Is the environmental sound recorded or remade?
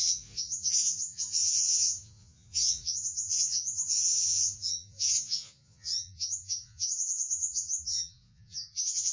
remade